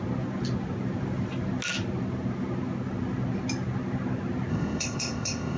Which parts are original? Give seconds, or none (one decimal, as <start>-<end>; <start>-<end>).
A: 0.0-4.5